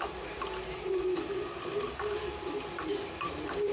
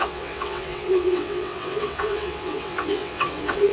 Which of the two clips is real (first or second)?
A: first